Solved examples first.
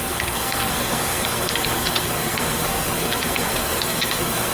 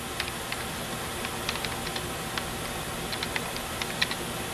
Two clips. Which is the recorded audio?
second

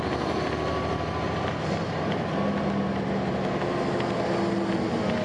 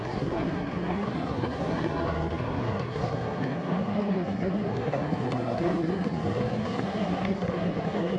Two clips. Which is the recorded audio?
first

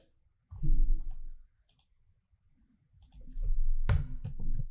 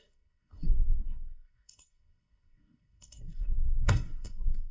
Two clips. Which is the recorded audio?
first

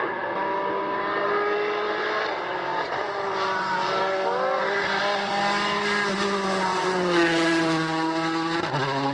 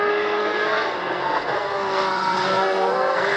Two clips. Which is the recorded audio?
first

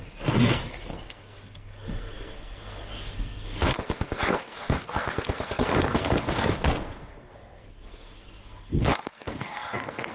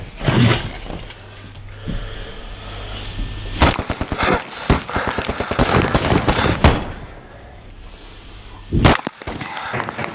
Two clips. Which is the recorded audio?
second